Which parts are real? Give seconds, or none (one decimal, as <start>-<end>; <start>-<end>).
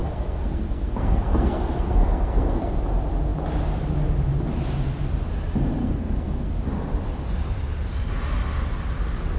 2.8-5.8; 6.5-9.4